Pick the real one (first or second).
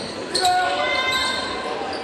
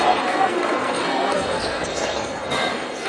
first